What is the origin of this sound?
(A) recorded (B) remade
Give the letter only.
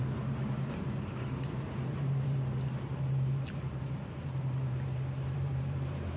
B